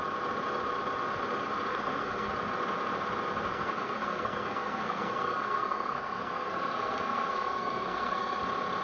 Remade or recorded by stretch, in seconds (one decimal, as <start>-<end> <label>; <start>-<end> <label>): 0.0-1.7 recorded; 1.7-2.3 remade; 2.3-3.5 recorded; 3.5-8.4 remade; 8.4-8.8 recorded